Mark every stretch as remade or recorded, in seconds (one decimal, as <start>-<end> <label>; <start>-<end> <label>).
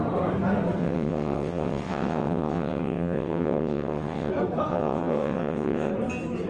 0.0-0.8 recorded; 0.8-4.3 remade; 4.3-4.7 recorded; 4.7-5.9 remade; 5.9-6.5 recorded